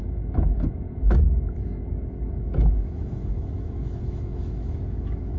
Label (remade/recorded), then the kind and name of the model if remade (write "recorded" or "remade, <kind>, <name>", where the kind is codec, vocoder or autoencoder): remade, autoencoder, DAC-VAE